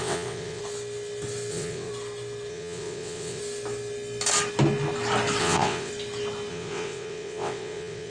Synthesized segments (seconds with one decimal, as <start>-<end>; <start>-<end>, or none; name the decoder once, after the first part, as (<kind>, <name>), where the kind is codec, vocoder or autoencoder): 0.0-0.6 (vocoder, WaveNeXt); 1.5-1.9; 2.5-3.4; 5.4-5.9; 6.5-8.1